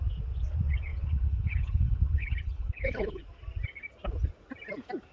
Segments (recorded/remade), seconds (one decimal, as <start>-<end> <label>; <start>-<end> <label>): 0.0-0.9 recorded; 0.9-3.2 remade; 3.2-5.1 recorded